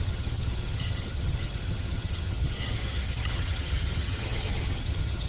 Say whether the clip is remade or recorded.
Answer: remade